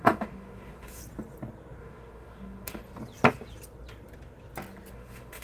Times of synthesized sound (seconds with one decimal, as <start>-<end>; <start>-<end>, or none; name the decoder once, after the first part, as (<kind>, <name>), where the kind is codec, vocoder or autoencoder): 0.0-1.0 (autoencoder, DAC-VAE); 1.8-2.8; 4.9-5.4